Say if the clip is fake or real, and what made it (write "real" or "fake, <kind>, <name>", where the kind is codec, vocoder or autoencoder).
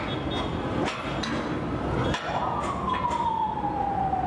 real